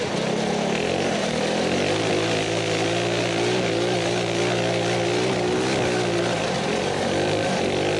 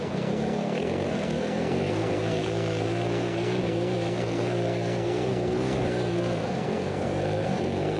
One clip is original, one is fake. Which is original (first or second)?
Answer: first